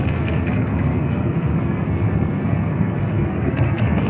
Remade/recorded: remade